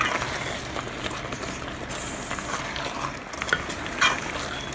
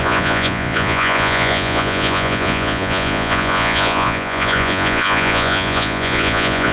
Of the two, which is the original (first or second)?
first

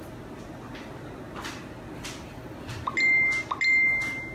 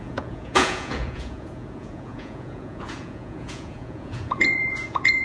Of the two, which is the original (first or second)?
first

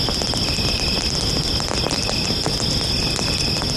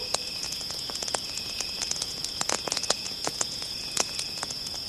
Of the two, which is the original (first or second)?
first